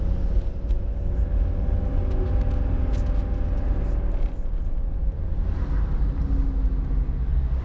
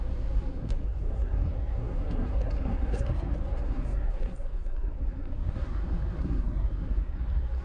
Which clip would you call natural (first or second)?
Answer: first